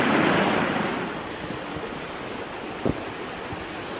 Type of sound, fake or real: real